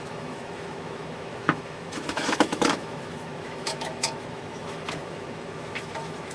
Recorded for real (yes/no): no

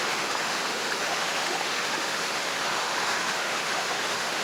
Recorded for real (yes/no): no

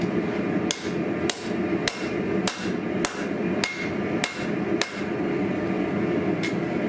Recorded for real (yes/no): yes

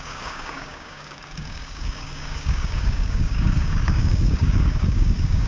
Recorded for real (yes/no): no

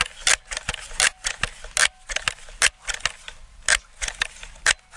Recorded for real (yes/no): yes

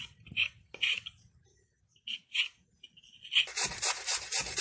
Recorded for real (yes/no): yes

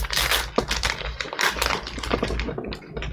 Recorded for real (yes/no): yes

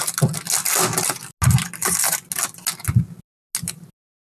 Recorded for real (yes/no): yes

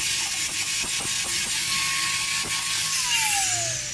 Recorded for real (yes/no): yes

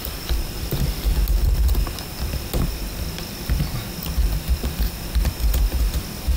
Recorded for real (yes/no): no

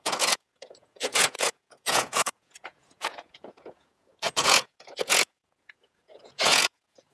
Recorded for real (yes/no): no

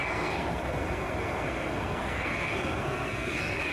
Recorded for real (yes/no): no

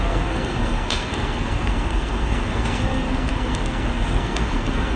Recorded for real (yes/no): no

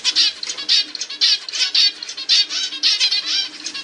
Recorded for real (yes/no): yes